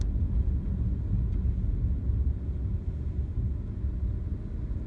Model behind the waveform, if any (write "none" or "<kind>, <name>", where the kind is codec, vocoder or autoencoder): none